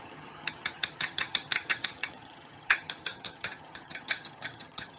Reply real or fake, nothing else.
fake